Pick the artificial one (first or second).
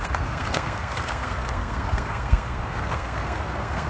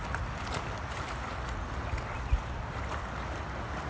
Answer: first